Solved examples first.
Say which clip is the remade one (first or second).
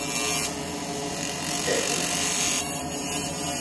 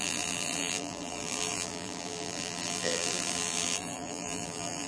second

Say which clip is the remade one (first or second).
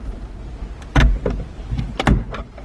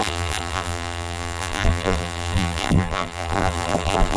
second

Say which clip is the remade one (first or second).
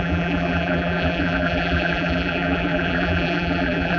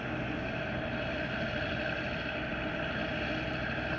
first